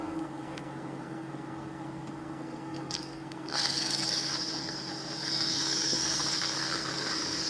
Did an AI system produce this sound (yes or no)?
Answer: yes